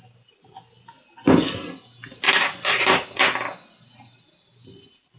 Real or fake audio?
real